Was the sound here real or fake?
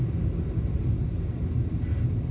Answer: real